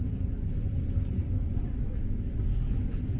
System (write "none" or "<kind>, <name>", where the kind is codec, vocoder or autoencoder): none